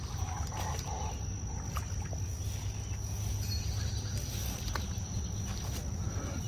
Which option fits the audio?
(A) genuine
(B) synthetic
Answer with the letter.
A